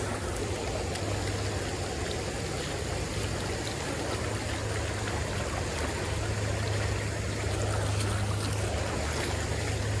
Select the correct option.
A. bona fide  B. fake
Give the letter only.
A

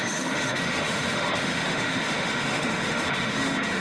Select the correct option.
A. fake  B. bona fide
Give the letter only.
A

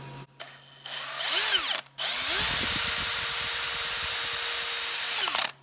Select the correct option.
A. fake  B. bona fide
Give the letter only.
B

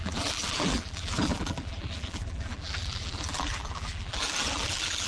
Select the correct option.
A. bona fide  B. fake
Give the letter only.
B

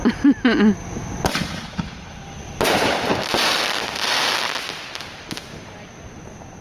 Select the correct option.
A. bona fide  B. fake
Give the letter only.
A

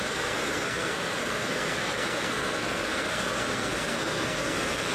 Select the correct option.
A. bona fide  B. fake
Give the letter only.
B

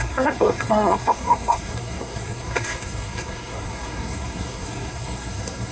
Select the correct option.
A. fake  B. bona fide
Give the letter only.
A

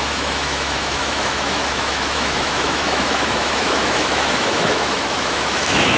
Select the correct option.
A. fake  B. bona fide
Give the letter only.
A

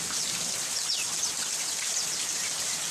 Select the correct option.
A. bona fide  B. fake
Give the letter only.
A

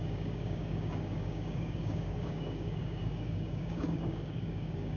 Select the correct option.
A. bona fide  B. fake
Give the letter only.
B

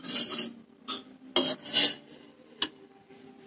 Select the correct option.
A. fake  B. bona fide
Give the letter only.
B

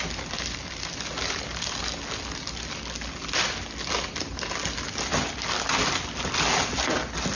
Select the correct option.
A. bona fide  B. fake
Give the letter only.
A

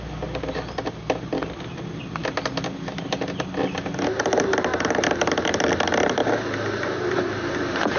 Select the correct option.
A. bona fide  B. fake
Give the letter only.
A